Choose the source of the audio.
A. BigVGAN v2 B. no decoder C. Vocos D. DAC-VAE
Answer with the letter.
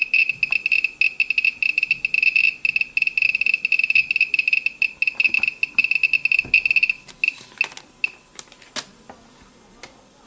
B